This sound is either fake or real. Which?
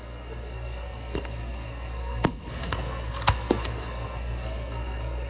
fake